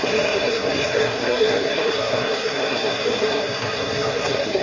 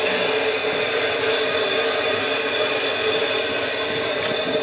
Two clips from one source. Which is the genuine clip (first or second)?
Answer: second